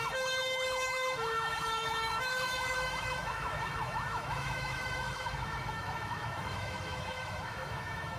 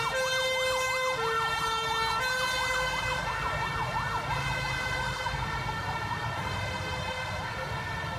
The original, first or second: second